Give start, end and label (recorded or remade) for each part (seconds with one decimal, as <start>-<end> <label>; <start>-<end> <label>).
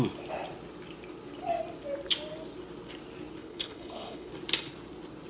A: 0.0-3.4 recorded; 3.4-4.3 remade; 4.3-5.3 recorded